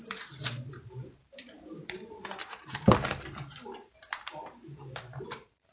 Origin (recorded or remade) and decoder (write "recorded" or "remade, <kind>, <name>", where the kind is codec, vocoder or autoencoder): remade, vocoder, BigVGAN v2